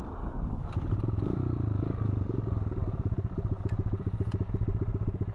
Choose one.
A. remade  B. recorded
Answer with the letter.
A